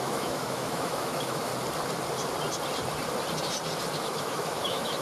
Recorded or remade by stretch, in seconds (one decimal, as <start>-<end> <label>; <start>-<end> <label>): 0.0-1.5 remade; 1.5-4.0 recorded; 4.0-5.0 remade